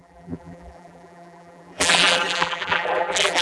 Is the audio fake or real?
fake